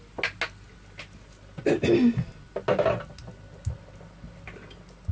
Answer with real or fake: real